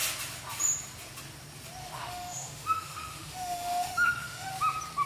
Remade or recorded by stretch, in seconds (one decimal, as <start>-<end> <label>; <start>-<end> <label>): 0.0-1.8 recorded; 1.8-4.5 remade; 4.5-5.1 recorded